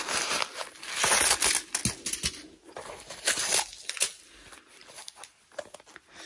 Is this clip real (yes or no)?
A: yes